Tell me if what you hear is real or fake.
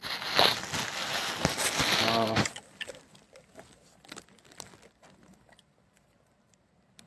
real